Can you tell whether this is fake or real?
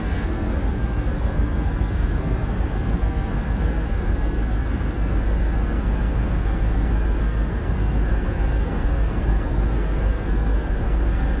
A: fake